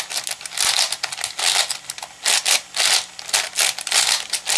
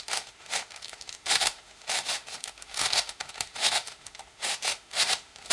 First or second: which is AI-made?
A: second